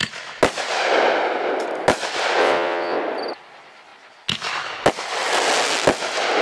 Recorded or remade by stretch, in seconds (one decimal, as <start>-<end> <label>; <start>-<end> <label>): 0.0-2.4 recorded; 2.4-3.0 remade; 3.0-6.4 recorded